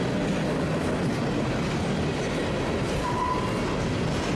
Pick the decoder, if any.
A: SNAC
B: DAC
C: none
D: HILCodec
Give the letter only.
C